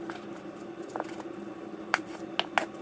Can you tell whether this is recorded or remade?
recorded